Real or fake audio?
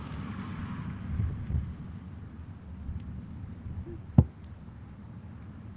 real